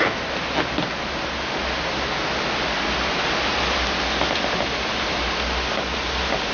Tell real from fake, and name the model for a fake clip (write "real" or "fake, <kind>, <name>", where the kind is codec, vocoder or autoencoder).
real